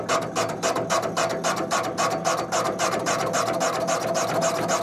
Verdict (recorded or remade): recorded